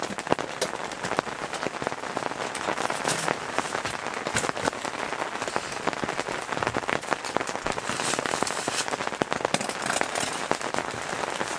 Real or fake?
real